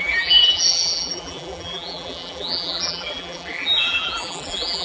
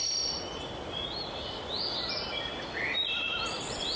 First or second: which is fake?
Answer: first